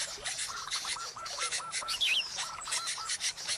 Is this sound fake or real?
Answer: fake